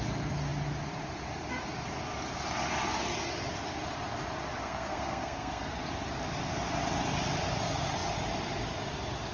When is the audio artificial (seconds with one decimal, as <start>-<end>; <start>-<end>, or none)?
4.6-5.8